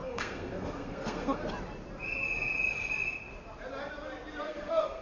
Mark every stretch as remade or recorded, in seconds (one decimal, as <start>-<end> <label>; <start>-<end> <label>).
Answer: 0.0-1.4 remade; 1.4-4.4 recorded; 4.4-5.0 remade